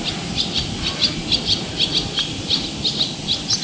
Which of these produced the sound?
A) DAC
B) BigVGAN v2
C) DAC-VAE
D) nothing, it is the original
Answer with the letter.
D